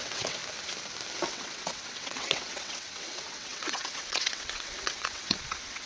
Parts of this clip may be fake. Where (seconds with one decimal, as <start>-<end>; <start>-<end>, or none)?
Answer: 0.0-0.4; 1.3-5.9